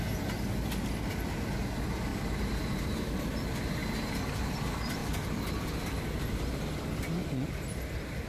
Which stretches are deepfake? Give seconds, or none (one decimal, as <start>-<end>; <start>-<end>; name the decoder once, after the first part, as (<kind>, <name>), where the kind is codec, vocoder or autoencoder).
5.0-5.7 (vocoder, BigVGAN v2)